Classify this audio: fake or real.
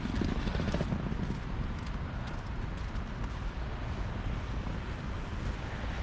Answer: real